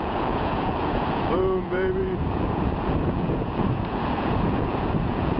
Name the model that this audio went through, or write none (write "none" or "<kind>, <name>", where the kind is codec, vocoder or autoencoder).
vocoder, Vocos